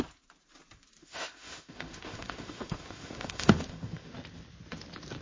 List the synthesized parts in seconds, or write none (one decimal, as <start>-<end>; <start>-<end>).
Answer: 1.0-4.1

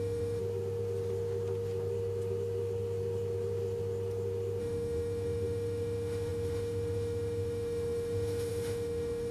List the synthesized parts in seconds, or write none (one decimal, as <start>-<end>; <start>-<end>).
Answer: 0.0-0.4; 4.6-9.3

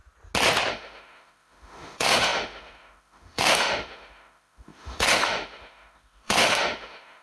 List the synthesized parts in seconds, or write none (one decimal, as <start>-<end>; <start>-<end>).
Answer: 0.7-7.2

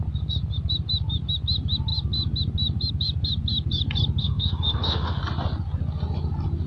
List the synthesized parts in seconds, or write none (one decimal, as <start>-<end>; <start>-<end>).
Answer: 4.2-5.2

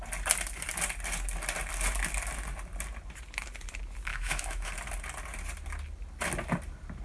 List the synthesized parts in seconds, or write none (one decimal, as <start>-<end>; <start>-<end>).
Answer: 4.1-4.7

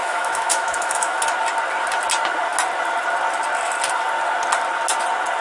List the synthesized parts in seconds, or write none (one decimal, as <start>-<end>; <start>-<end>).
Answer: 0.0-1.2

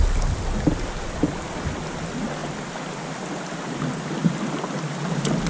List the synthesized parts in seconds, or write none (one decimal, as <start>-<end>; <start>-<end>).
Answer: none